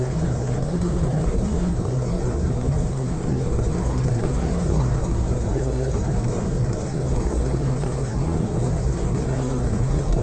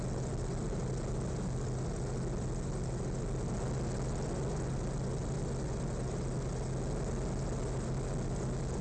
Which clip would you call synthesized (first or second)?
first